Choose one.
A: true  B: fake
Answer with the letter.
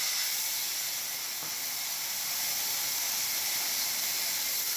A